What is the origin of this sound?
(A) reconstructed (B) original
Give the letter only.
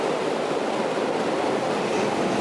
B